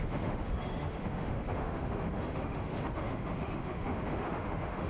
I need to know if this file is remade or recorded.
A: remade